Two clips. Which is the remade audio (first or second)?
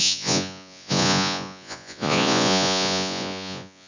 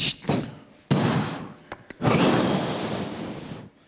first